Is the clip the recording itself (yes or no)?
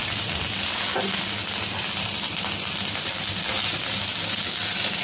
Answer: yes